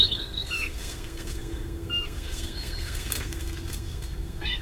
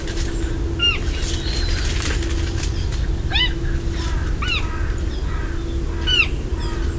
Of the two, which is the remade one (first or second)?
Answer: first